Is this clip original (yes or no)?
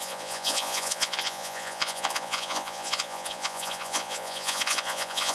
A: no